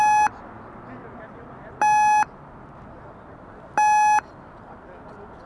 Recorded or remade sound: recorded